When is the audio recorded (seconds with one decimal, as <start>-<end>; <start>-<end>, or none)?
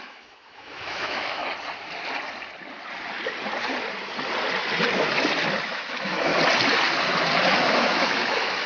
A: 1.4-5.6; 6.3-7.6